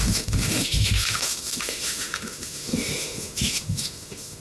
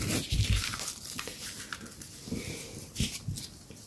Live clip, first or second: second